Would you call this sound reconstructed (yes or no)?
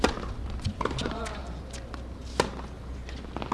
no